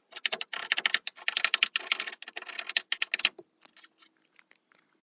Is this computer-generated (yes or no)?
no